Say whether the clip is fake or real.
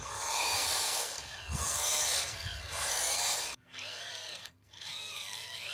fake